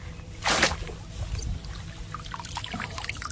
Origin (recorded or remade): recorded